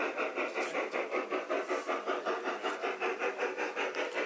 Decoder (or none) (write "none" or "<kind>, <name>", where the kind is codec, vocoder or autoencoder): vocoder, BigVGAN v2